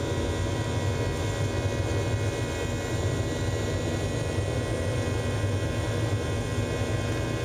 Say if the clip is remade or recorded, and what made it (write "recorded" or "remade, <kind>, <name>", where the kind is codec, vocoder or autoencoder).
recorded